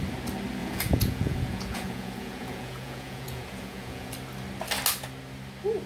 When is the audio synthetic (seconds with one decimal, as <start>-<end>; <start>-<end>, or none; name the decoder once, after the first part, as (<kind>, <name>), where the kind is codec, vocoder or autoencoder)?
0.6-4.1 (vocoder, Vocos)